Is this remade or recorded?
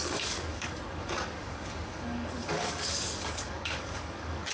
remade